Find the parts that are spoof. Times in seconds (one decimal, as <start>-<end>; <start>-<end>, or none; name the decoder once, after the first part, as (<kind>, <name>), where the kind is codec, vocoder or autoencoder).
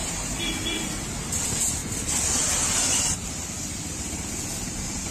none